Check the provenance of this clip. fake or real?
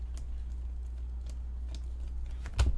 real